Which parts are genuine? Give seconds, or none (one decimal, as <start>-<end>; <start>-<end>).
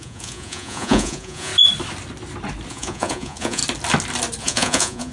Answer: 1.5-2.7; 3.6-4.4